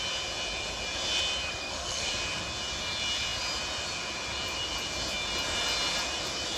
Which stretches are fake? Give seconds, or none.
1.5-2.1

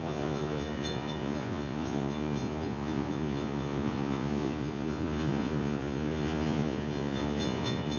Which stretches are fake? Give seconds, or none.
0.0-8.0

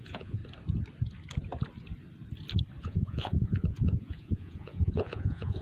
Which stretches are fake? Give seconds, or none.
0.0-0.4; 2.8-5.6

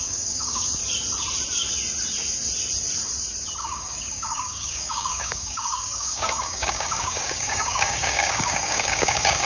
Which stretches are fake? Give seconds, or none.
0.0-0.8; 3.6-9.5

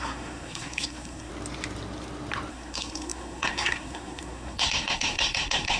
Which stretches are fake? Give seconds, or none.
0.0-1.3; 2.5-5.8

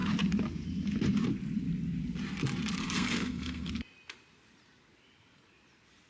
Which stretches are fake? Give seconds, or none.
2.8-3.7

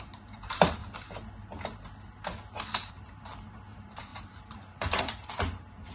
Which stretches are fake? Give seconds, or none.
0.0-0.8; 2.9-5.9